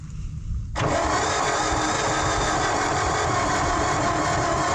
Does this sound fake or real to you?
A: real